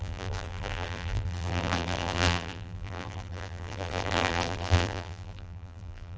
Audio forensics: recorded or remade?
remade